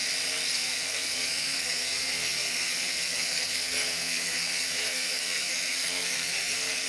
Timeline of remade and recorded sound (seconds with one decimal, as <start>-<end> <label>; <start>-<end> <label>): 0.0-0.5 recorded; 0.5-6.9 remade